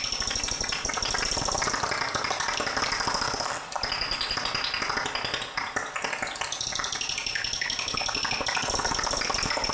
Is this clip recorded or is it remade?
recorded